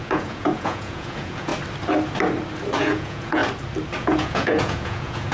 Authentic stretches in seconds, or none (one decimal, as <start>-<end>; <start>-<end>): 1.5-2.8; 3.4-4.0